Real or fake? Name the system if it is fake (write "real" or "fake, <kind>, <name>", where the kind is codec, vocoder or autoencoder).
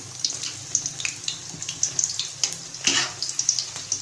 real